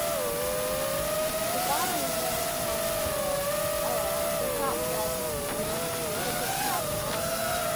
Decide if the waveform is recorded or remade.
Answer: recorded